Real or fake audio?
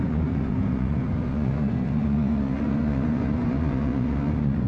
fake